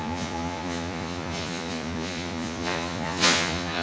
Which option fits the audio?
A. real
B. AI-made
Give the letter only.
B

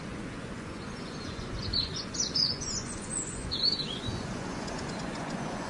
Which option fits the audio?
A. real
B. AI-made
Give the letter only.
B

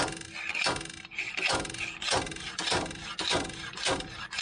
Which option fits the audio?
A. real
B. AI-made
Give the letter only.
A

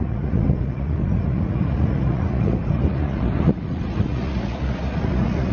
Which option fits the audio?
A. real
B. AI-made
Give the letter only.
B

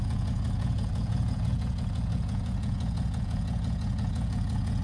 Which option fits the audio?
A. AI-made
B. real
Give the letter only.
A